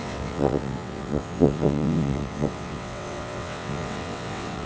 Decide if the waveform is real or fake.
fake